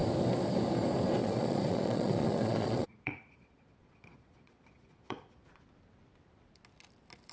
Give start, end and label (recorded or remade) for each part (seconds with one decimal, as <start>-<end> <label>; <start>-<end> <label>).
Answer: 0.0-1.2 recorded; 1.2-5.6 remade; 5.6-7.3 recorded